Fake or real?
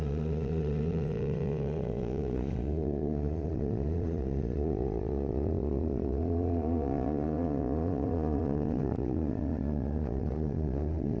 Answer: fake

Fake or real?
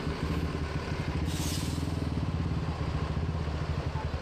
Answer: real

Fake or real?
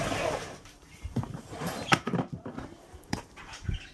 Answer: fake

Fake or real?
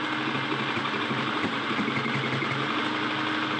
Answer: real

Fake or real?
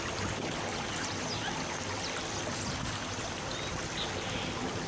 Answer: real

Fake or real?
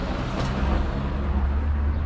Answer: real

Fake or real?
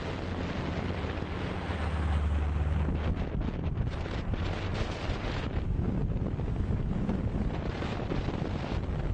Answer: real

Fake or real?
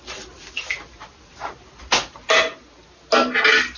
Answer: real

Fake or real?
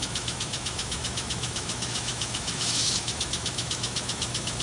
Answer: fake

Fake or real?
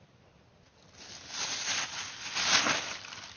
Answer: real